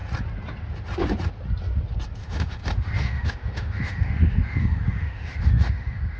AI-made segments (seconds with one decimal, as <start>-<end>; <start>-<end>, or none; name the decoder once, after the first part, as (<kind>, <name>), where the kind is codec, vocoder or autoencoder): 2.2-6.2 (autoencoder, DAC-VAE)